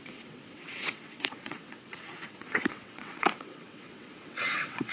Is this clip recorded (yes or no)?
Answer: no